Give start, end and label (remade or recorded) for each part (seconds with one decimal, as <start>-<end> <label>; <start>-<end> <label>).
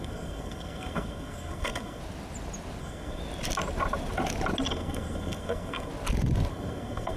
0.0-2.0 remade; 2.0-2.8 recorded; 2.8-3.2 remade; 3.2-4.7 recorded; 4.7-5.9 remade; 5.9-6.5 recorded; 6.5-7.2 remade